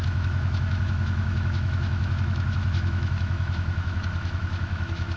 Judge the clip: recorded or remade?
remade